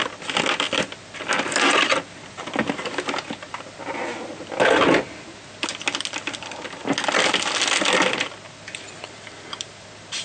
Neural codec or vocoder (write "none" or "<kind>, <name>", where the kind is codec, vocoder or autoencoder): none